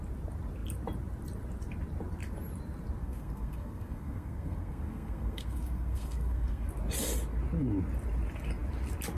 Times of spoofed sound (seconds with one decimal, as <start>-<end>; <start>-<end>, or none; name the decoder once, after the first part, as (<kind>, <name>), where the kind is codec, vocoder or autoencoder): 3.0-6.7 (codec, SNAC)